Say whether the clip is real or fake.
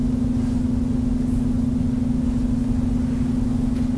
real